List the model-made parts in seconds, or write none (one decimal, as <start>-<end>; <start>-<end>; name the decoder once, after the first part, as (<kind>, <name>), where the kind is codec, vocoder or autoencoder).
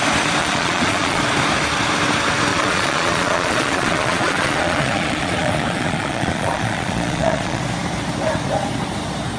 0.4-1.2 (vocoder, Vocos); 2.5-7.6